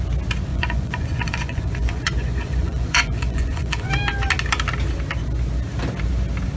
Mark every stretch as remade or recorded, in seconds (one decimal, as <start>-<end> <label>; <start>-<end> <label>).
0.0-0.5 recorded; 0.5-3.9 remade; 3.9-6.6 recorded